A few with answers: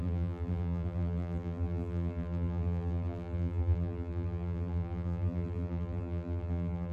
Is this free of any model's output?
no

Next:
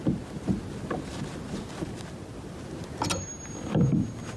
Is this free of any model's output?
yes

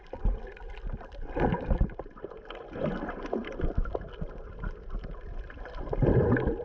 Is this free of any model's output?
no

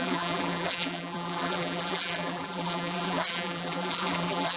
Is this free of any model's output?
no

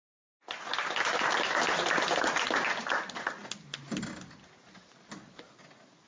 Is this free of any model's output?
yes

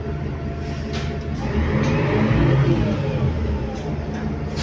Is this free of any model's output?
yes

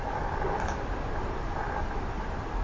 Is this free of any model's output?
yes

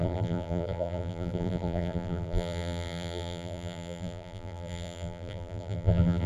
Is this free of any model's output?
no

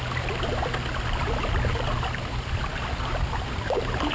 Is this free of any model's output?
no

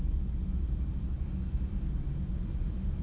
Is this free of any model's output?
no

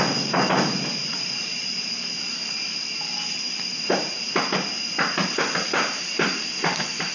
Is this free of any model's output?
no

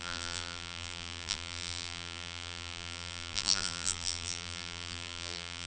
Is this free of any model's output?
no